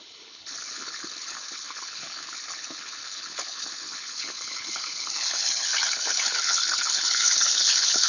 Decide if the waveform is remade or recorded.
remade